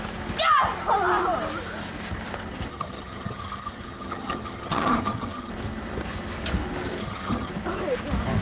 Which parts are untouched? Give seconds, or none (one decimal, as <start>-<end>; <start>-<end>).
0.0-2.7; 5.5-7.0; 7.5-8.4